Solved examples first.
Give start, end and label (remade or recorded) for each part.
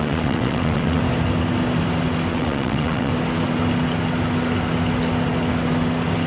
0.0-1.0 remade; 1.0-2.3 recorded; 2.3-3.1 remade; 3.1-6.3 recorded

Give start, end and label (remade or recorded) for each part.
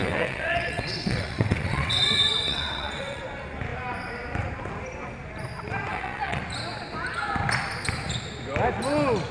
0.0-3.2 remade; 3.2-5.9 recorded; 5.9-6.4 remade; 6.4-9.3 recorded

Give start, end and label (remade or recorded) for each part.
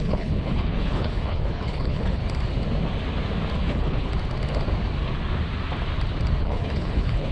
0.0-2.2 remade; 2.2-3.6 recorded; 3.6-4.1 remade; 4.1-6.4 recorded; 6.4-7.3 remade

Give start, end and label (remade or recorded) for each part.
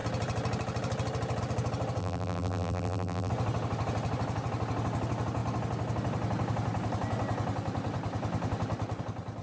0.0-2.0 recorded; 2.0-3.3 remade; 3.3-9.4 recorded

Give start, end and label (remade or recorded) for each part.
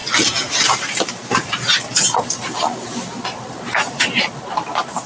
0.0-0.5 recorded; 0.5-5.1 remade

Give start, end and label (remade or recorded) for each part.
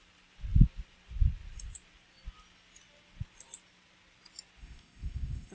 0.0-4.6 recorded; 4.6-5.5 remade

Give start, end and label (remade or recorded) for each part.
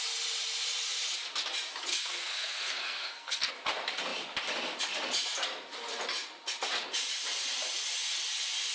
0.0-1.9 recorded; 1.9-3.5 remade; 3.5-8.7 recorded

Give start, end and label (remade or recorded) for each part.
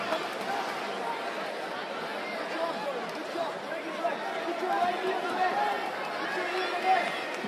0.0-7.5 recorded